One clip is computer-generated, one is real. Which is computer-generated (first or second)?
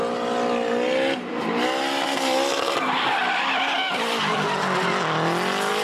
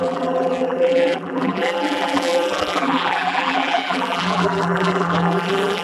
second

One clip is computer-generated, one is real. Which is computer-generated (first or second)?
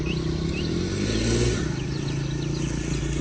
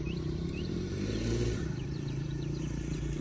second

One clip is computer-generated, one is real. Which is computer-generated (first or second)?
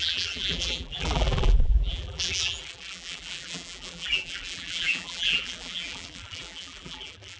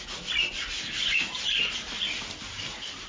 first